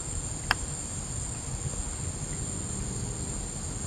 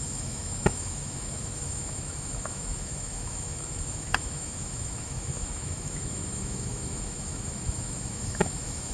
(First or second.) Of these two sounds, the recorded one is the first